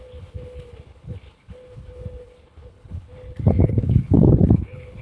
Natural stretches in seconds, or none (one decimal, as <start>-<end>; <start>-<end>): none